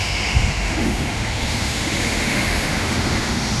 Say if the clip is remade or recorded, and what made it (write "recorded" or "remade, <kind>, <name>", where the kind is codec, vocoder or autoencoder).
remade, autoencoder, DAC-VAE